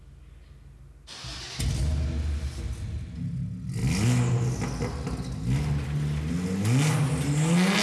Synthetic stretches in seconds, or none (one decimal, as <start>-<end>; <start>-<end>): none